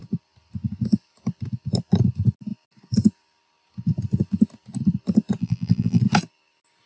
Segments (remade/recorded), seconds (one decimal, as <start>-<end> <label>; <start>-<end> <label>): 0.0-5.4 recorded; 5.4-6.0 remade; 6.0-6.9 recorded